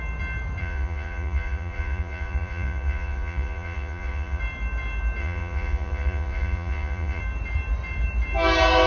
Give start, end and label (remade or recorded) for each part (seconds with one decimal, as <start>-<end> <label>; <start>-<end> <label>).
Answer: 0.0-0.6 recorded; 0.6-4.4 remade; 4.4-5.2 recorded; 5.2-7.2 remade; 7.2-8.9 recorded